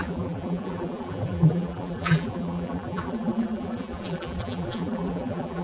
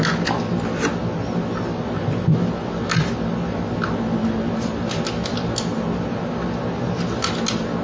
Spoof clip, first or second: first